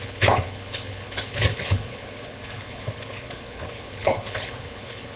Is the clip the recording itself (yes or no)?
no